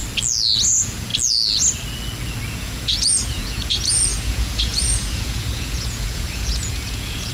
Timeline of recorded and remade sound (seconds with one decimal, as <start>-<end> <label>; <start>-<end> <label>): 0.0-0.7 recorded; 0.7-1.1 remade; 1.1-2.5 recorded; 2.5-7.3 remade